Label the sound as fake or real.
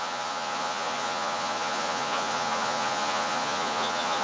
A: fake